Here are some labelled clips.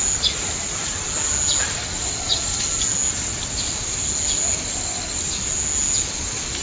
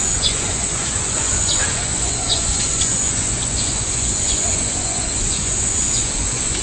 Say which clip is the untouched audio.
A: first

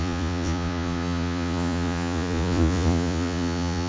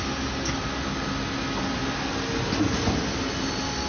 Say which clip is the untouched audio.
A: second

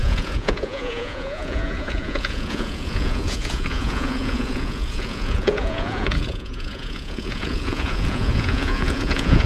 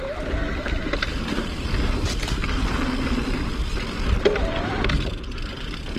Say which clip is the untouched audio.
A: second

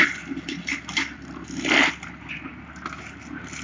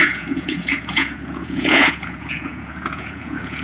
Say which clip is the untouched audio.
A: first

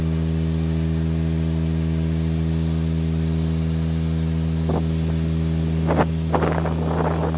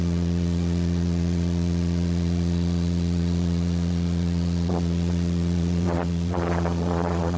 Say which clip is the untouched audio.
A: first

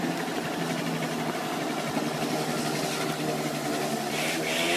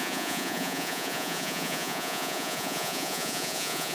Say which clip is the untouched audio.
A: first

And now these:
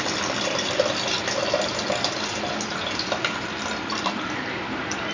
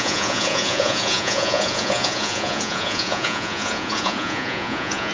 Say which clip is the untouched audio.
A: first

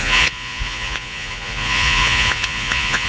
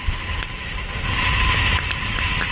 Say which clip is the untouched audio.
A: second